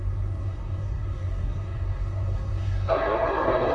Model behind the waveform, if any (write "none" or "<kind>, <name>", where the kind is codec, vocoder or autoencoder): codec, SNAC